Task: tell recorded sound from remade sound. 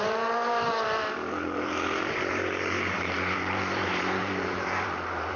remade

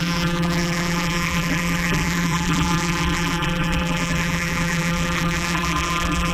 remade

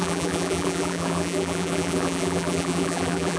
remade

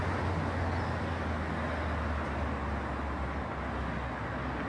recorded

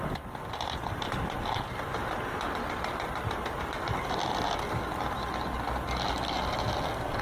recorded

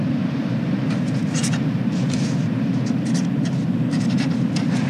remade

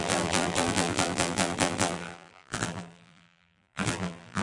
remade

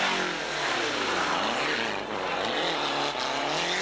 recorded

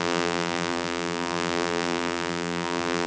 remade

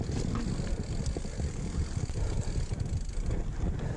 recorded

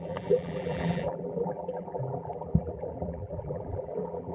remade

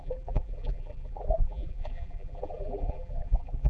remade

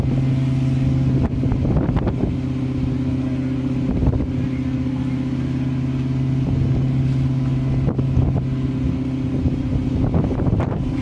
recorded